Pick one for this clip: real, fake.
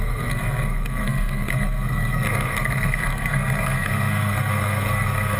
fake